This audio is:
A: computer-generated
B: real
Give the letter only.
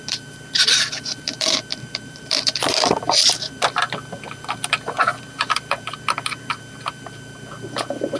A